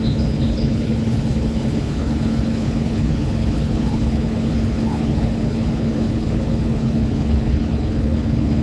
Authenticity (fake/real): fake